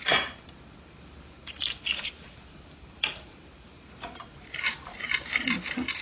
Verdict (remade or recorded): remade